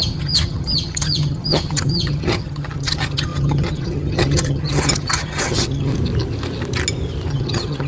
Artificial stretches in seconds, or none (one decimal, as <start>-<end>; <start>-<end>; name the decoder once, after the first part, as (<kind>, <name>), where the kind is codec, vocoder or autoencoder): 0.0-5.9 (vocoder, HiFi-GAN); 7.3-7.9